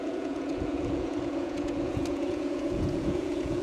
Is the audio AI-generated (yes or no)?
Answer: yes